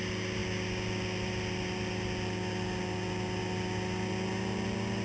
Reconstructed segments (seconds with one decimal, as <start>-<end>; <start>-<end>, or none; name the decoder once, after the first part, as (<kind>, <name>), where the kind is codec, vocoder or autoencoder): none